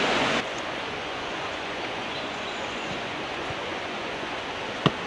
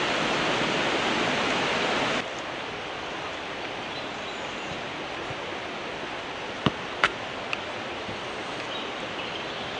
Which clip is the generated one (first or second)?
first